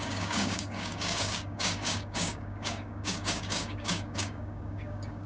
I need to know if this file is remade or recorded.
remade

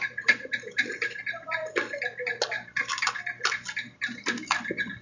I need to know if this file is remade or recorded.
recorded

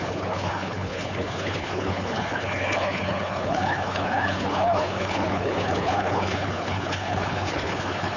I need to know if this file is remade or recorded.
remade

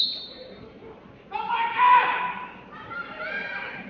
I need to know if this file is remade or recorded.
remade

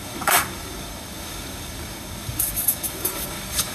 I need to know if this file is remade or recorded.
remade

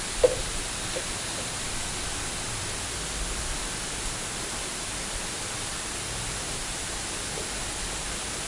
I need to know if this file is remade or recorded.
recorded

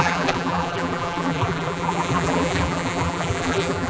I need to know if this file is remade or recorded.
remade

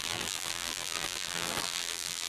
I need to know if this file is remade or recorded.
remade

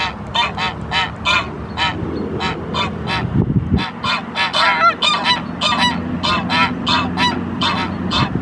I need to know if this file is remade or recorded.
recorded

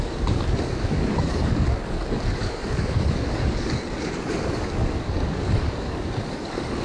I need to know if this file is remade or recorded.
remade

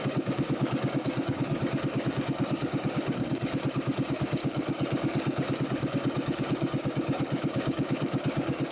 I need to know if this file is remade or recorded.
remade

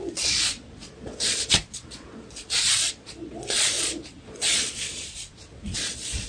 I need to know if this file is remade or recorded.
remade